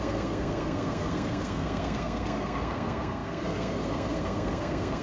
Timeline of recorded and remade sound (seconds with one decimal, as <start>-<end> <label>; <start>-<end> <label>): 0.0-5.0 remade